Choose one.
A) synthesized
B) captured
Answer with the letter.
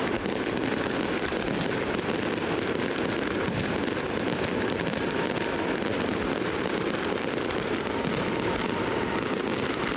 B